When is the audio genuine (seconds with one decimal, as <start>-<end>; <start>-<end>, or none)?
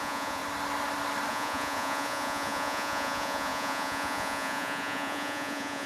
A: 0.4-1.3